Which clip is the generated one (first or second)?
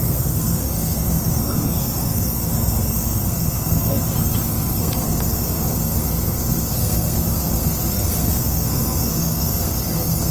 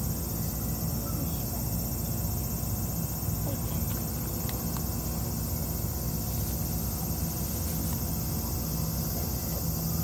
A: first